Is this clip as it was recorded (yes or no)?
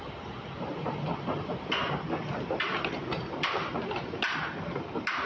yes